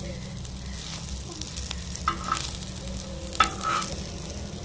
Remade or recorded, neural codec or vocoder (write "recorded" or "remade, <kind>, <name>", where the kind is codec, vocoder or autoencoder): recorded